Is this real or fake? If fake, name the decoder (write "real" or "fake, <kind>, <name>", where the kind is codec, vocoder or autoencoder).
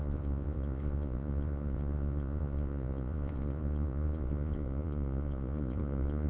fake, vocoder, Vocos